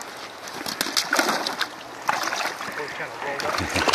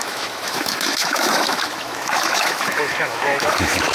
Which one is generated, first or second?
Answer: second